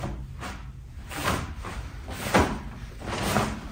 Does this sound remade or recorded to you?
recorded